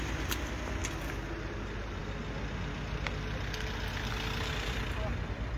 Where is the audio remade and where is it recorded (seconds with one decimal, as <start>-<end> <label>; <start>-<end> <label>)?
0.0-5.6 recorded